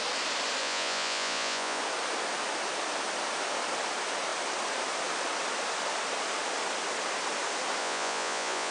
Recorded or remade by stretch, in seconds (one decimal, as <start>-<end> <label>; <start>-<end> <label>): 0.0-0.6 recorded; 0.6-1.8 remade; 1.8-7.8 recorded; 7.8-8.7 remade